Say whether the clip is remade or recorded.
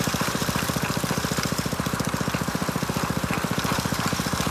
remade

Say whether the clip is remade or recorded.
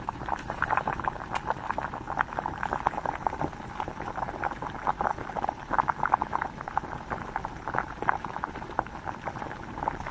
remade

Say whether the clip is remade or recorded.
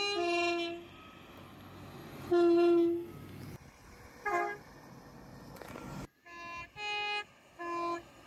recorded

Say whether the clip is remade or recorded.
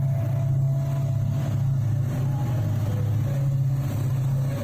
recorded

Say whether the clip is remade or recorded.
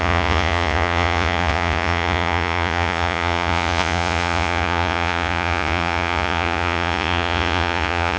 remade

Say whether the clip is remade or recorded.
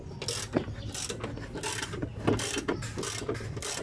recorded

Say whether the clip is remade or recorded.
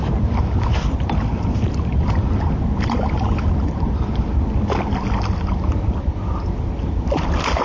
recorded